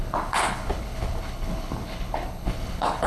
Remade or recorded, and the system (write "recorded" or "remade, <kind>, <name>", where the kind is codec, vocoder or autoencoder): remade, codec, HILCodec